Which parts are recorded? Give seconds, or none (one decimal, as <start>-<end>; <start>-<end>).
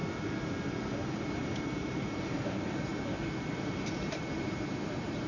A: 0.0-1.6; 2.9-3.4